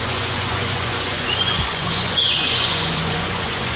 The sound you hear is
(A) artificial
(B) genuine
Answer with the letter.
A